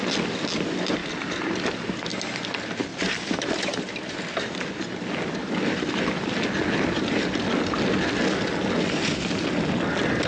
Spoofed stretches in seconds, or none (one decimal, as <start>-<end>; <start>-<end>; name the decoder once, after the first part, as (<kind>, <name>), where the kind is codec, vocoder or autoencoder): 2.9-4.1 (vocoder, BigVGAN v2)